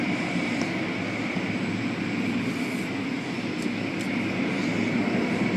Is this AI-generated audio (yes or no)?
no